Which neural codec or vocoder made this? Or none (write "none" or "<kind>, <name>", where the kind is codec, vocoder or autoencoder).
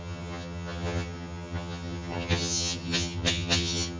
vocoder, HiFi-GAN